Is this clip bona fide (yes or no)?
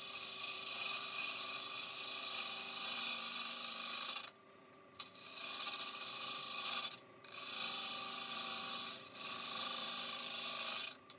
no